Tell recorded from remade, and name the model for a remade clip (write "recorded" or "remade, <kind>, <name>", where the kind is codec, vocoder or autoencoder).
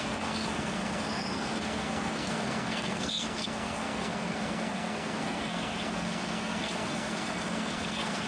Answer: remade, codec, SNAC